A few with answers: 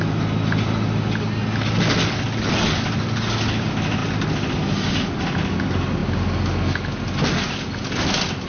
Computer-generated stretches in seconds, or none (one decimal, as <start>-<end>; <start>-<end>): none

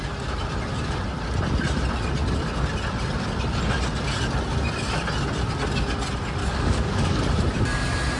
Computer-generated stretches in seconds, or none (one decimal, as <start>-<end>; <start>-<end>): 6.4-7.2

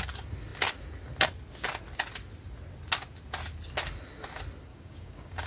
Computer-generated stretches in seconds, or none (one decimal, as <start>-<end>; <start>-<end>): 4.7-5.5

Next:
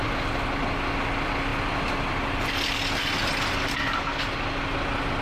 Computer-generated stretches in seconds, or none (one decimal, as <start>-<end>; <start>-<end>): none

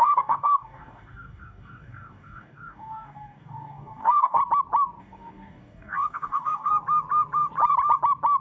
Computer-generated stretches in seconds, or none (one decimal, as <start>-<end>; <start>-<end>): 0.0-4.4; 5.0-6.7

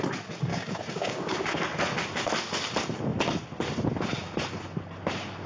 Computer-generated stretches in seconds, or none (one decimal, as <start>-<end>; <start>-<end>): 0.5-1.6